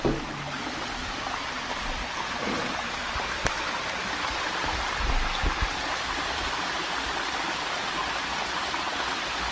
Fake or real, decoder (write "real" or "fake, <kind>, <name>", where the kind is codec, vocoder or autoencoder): real